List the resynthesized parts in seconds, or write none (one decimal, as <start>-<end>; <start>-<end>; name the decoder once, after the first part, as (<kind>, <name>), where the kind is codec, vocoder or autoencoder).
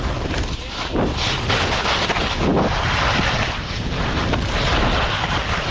2.5-4.2 (vocoder, BigVGAN v2)